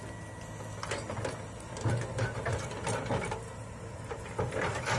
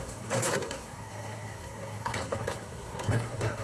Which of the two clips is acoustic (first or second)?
first